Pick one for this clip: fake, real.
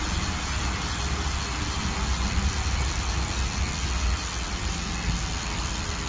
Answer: fake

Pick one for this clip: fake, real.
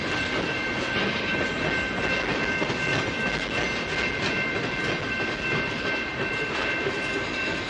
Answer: real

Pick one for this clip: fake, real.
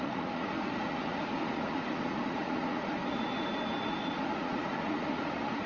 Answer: fake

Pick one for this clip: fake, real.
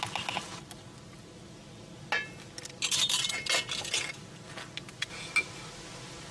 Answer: real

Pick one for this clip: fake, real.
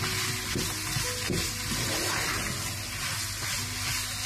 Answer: real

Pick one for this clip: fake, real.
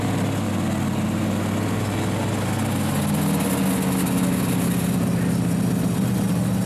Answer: real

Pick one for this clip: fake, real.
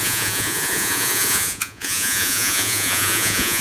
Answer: fake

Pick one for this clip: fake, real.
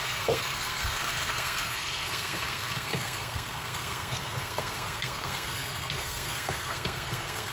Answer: fake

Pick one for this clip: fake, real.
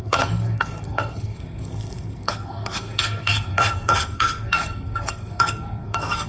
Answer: fake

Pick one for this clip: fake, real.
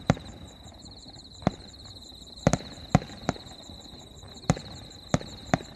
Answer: fake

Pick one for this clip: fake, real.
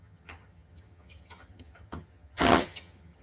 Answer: fake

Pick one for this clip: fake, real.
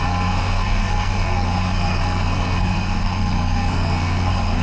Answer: fake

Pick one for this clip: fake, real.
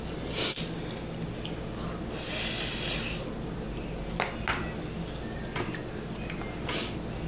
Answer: real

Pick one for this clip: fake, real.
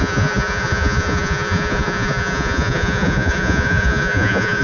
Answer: fake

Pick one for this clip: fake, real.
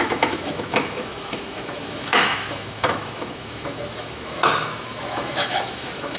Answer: fake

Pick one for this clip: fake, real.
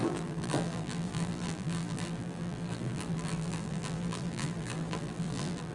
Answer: fake